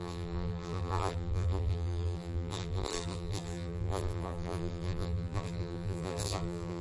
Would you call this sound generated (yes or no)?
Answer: yes